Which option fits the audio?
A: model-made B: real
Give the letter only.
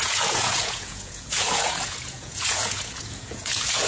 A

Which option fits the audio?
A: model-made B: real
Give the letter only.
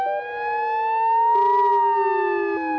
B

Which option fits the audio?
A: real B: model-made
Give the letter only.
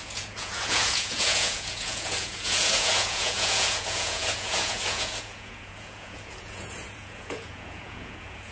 B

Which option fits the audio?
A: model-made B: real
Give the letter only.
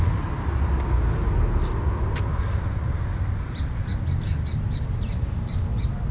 B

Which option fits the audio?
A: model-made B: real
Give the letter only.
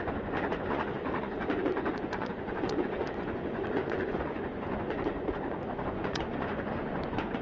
A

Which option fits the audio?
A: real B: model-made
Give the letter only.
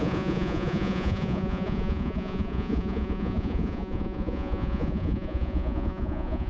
B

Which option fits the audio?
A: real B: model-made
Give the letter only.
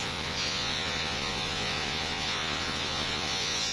B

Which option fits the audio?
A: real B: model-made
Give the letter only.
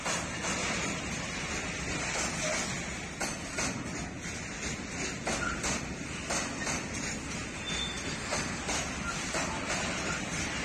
A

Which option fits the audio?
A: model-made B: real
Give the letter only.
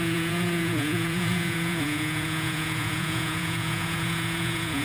A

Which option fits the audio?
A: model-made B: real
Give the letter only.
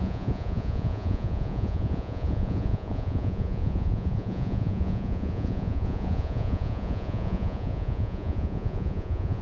A